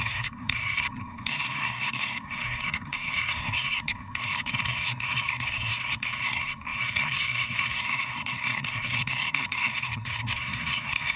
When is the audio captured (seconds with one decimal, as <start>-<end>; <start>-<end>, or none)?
none